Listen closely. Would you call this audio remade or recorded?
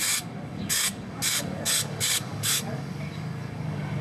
remade